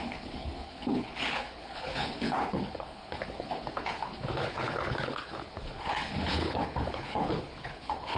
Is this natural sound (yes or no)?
no